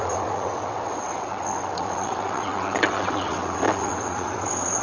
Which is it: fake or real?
fake